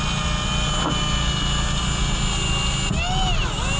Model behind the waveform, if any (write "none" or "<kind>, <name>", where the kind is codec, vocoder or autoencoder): none